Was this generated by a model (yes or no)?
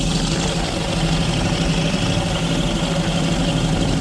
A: no